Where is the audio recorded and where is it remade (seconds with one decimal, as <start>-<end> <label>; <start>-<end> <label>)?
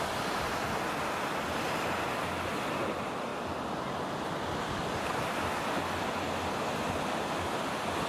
0.0-8.1 recorded